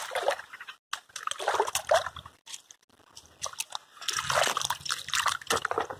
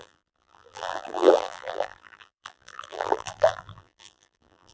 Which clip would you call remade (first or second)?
second